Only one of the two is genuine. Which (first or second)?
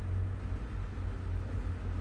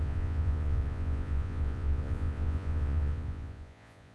first